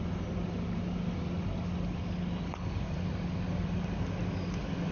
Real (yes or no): yes